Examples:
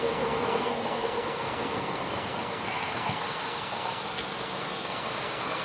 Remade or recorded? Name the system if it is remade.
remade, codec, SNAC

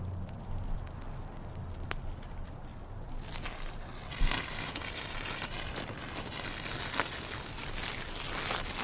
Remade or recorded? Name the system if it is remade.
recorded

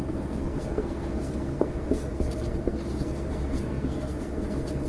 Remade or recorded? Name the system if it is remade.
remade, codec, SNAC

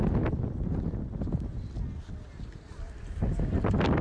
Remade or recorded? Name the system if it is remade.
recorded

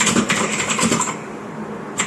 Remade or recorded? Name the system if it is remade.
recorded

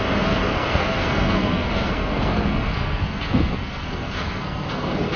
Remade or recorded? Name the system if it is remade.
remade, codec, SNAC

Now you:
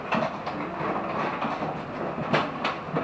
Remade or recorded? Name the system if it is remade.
recorded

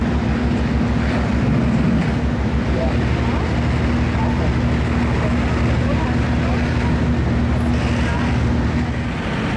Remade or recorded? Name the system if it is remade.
recorded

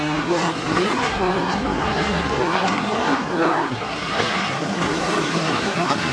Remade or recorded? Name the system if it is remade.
remade, codec, SNAC